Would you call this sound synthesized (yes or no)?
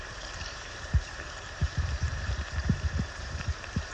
yes